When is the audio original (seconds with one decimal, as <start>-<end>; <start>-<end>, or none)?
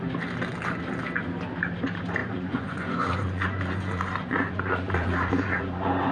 0.0-2.2